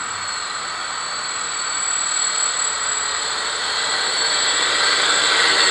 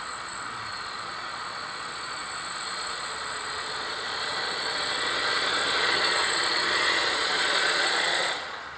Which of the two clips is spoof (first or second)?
second